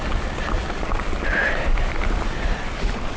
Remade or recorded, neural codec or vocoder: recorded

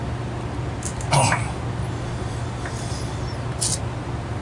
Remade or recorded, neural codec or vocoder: recorded